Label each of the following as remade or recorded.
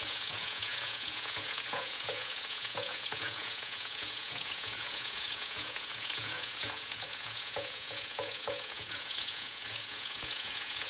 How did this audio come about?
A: remade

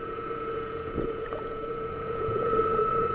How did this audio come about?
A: remade